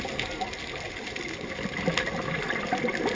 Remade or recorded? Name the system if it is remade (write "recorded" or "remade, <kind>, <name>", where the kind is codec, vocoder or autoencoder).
recorded